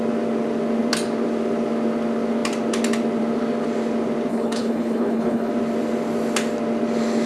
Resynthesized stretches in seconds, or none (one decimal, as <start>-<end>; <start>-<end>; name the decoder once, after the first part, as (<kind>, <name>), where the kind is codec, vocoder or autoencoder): 4.3-5.5 (codec, HILCodec)